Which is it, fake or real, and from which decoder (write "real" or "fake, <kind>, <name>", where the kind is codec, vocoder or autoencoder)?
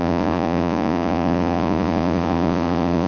fake, vocoder, Vocos